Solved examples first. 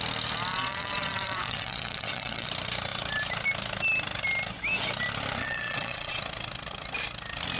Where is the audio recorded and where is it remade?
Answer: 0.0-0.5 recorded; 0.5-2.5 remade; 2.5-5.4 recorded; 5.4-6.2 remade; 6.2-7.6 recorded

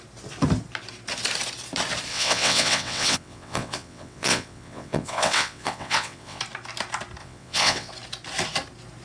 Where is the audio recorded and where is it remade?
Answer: 0.0-2.1 recorded; 2.1-6.4 remade; 6.4-7.2 recorded; 7.2-7.9 remade; 7.9-9.0 recorded

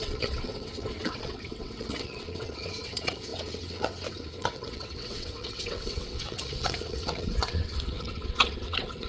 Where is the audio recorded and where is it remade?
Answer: 0.0-9.1 remade

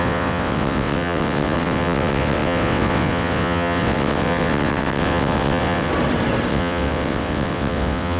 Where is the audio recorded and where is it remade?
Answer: 0.0-5.9 remade; 5.9-6.5 recorded; 6.5-8.2 remade